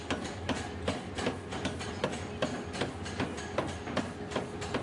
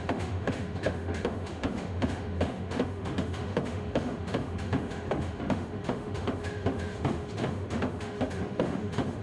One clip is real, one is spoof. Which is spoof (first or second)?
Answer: second